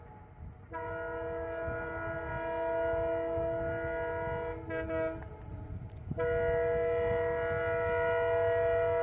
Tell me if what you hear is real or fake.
real